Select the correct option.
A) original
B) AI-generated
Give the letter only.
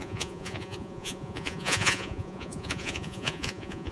B